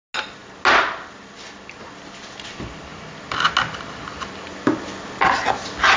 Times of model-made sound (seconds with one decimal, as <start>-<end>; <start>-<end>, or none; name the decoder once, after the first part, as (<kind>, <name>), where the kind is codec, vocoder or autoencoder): none